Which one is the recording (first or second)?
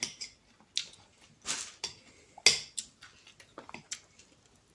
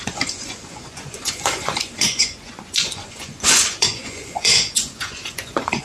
first